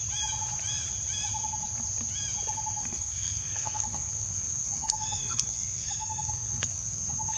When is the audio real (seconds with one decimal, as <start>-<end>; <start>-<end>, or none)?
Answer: 0.0-2.8